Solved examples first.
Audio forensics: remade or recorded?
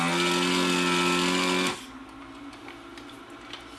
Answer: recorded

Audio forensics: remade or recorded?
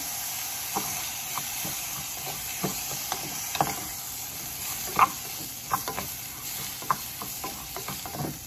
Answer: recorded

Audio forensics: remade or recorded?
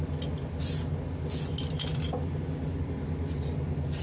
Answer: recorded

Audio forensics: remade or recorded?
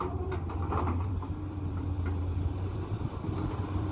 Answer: remade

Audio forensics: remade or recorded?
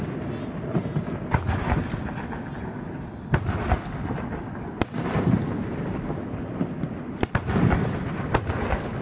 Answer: recorded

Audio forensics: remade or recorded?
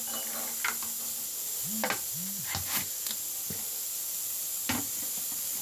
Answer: recorded